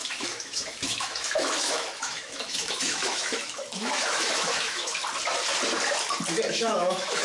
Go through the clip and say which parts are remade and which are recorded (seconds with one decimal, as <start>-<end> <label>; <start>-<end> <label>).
0.0-5.0 remade; 5.0-6.5 recorded; 6.5-7.2 remade